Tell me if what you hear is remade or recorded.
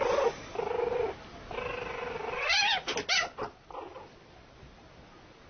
recorded